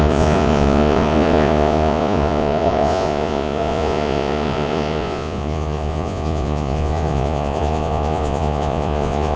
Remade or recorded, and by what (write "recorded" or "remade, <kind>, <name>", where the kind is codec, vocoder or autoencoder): remade, vocoder, Vocos